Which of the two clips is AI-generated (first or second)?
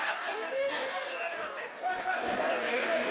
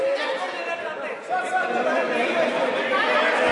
first